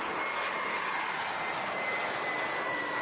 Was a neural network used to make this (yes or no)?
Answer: no